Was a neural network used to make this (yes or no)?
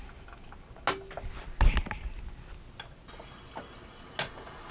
no